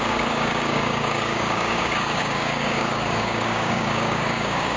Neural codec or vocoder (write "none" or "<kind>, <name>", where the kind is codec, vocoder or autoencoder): codec, DAC